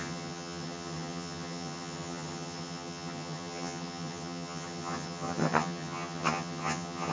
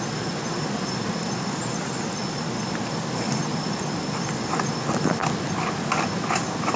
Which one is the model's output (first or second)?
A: first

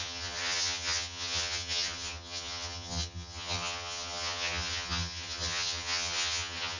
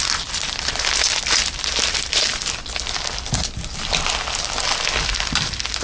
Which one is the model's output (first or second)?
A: first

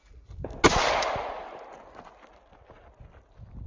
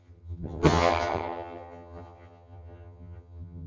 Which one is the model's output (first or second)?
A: second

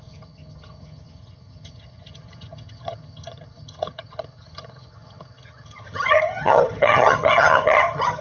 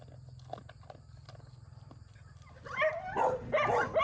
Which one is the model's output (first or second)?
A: first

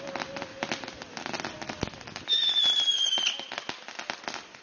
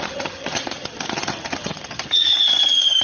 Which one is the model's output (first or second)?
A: second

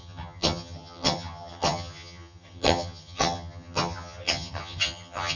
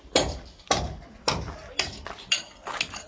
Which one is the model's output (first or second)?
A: first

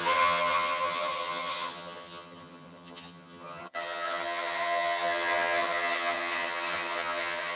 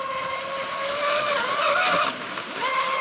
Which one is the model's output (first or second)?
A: first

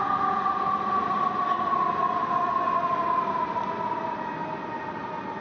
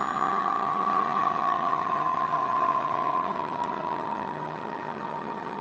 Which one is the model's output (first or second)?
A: second